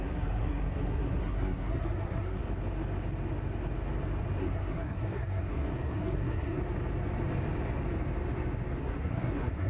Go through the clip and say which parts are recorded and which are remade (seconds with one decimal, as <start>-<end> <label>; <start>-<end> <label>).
0.0-2.4 remade; 2.4-4.4 recorded; 4.4-6.6 remade; 6.6-8.8 recorded; 8.8-9.7 remade